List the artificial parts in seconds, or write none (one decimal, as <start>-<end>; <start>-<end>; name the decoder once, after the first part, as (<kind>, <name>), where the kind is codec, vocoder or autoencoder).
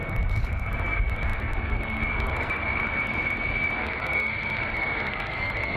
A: 0.0-2.8 (codec, SNAC); 3.8-5.8